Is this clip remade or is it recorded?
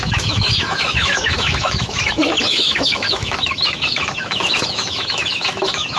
remade